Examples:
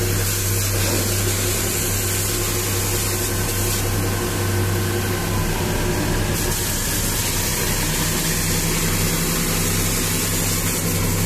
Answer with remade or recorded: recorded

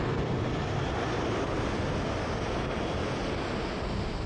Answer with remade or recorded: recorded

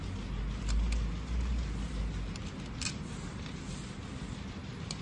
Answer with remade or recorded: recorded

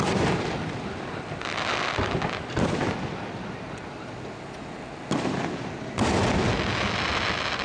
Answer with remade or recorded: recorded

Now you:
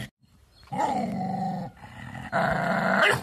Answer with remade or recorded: recorded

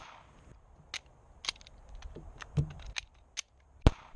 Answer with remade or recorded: recorded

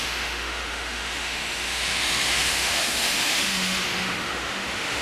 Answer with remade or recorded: remade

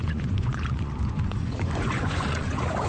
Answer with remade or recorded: remade